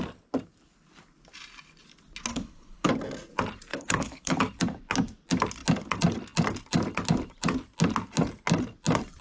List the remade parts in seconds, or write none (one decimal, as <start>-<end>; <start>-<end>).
2.3-2.9; 3.7-4.4